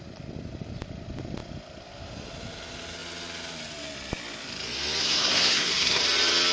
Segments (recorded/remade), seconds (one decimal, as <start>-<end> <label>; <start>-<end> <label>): 0.0-5.0 recorded; 5.0-6.0 remade; 6.0-6.5 recorded